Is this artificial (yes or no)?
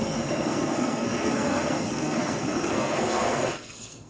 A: yes